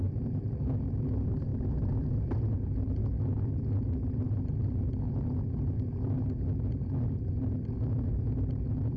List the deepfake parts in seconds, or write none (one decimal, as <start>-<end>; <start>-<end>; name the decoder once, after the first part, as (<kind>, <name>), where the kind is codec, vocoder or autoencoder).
none